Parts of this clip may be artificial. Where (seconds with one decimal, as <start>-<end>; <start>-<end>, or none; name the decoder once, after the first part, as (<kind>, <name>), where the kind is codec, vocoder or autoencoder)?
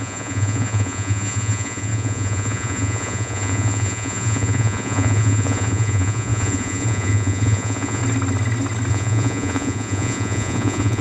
0.0-8.0 (vocoder, Vocos); 8.9-11.0